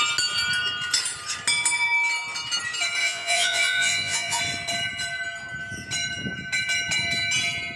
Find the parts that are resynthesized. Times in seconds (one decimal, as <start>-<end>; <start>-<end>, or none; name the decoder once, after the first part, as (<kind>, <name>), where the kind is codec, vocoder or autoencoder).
3.0-4.4 (vocoder, Vocos)